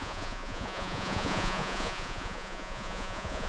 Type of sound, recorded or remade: remade